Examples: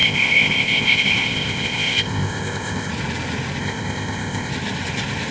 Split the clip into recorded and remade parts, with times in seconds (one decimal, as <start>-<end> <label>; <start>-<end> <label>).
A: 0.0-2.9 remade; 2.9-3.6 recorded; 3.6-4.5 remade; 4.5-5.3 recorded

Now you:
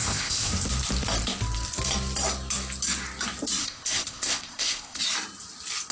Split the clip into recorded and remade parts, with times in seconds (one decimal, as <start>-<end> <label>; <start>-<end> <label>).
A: 0.0-0.5 remade; 0.5-3.6 recorded; 3.6-5.0 remade; 5.0-5.9 recorded

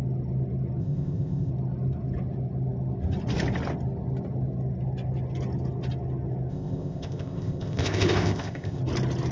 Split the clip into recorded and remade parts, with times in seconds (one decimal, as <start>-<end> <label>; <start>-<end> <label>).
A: 0.0-0.8 recorded; 0.8-1.5 remade; 1.5-6.5 recorded; 6.5-8.8 remade; 8.8-9.3 recorded

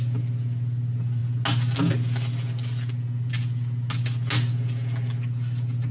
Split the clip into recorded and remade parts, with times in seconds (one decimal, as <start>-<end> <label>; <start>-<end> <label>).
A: 0.0-5.9 recorded